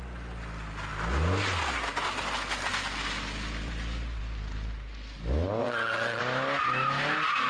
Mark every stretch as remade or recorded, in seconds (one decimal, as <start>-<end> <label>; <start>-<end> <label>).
0.0-5.6 recorded; 5.6-6.2 remade; 6.2-7.5 recorded